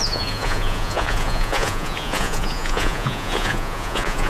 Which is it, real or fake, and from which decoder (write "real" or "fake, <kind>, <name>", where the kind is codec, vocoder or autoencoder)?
fake, vocoder, Vocos